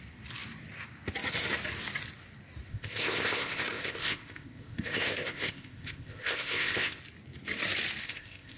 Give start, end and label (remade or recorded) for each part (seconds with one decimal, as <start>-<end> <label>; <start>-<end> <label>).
0.0-2.7 recorded; 2.7-7.0 remade; 7.0-8.0 recorded; 8.0-8.6 remade